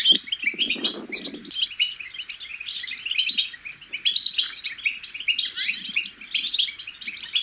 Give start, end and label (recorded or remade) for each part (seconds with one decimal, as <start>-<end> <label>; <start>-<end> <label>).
0.0-7.4 recorded